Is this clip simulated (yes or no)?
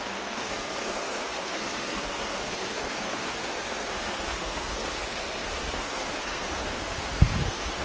yes